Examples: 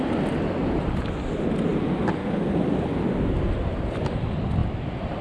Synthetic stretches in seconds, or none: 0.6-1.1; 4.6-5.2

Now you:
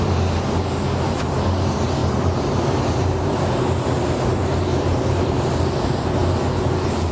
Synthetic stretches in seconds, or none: 2.0-3.5; 4.7-5.6

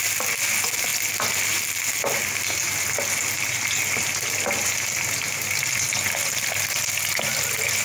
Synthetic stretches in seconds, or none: none

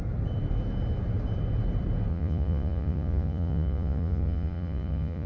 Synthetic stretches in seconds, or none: 2.1-5.3

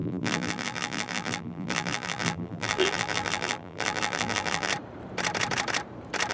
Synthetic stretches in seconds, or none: 0.0-4.7

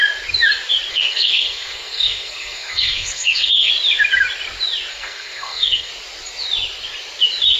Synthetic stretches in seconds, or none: 0.9-3.7; 4.9-5.9

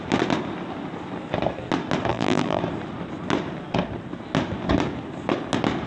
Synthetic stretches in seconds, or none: 2.1-2.6